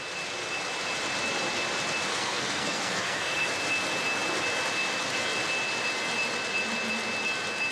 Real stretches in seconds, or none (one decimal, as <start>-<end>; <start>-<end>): 0.0-2.1; 3.5-7.7